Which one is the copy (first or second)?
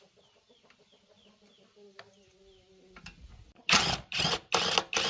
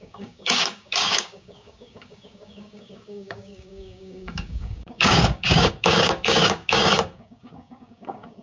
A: second